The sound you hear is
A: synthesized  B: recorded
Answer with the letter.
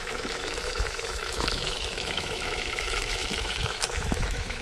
A